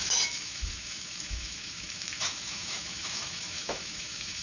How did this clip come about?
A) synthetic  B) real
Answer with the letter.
A